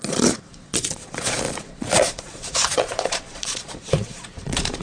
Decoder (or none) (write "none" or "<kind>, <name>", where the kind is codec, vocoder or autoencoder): vocoder, Vocos